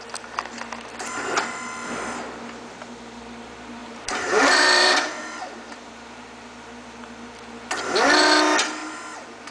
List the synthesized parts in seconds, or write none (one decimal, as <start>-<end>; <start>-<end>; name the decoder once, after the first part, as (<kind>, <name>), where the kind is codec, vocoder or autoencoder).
3.8-5.9 (vocoder, BigVGAN v2); 8.8-9.5